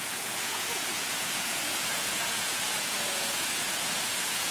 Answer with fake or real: fake